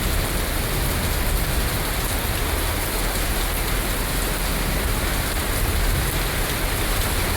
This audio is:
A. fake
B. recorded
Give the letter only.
B